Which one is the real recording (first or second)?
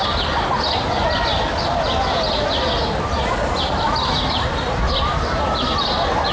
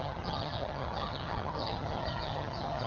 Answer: first